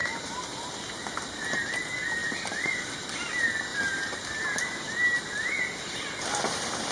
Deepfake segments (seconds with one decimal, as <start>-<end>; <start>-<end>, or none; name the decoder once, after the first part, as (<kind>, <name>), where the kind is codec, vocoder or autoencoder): 0.0-1.3 (vocoder, BigVGAN v2); 2.2-2.9